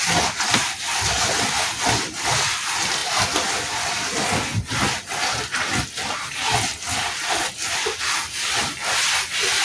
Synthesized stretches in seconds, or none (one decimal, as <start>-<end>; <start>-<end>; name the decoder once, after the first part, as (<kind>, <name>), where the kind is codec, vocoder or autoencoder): none